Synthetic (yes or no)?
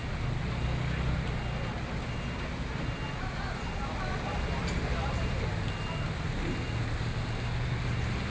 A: no